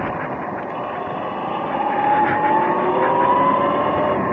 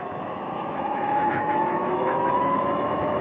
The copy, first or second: second